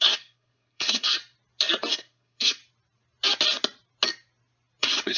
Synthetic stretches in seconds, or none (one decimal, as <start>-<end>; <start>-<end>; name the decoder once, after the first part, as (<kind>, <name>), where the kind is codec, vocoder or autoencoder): 0.0-1.2 (codec, SNAC); 1.9-2.6; 4.8-5.2